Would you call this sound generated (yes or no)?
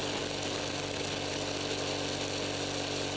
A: no